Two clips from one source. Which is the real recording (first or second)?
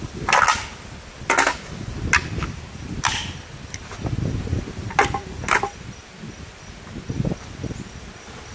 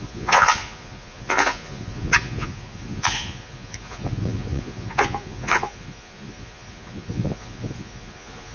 first